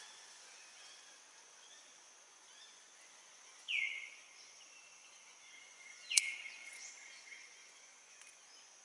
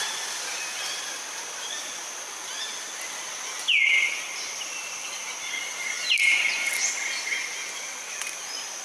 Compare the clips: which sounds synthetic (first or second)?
first